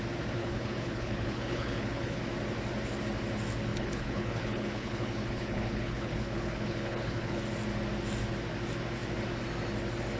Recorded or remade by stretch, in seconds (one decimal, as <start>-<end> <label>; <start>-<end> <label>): 0.0-0.4 recorded; 0.4-2.2 remade; 2.2-3.7 recorded; 3.7-7.4 remade; 7.4-10.2 recorded